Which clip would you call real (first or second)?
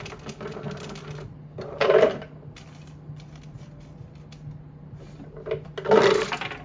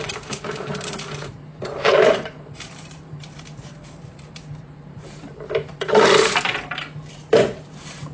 first